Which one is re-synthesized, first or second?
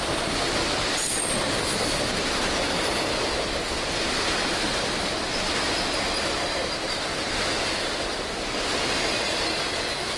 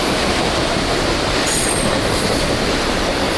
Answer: second